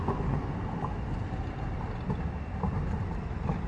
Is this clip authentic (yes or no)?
yes